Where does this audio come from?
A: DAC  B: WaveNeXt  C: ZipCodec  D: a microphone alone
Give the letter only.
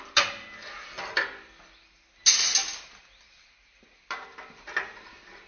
D